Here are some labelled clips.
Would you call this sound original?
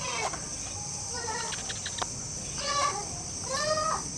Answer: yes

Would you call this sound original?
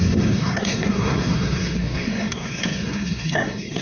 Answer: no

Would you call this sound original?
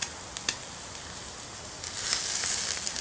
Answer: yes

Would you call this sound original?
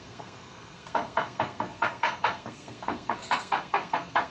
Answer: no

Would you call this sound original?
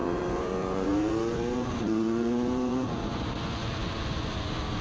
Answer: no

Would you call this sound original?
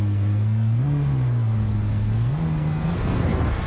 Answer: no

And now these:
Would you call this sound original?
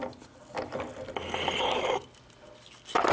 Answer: yes